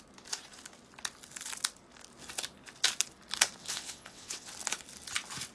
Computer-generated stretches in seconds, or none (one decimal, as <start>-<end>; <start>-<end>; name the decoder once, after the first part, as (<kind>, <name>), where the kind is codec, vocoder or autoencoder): 3.6-4.5 (vocoder, WaveNeXt)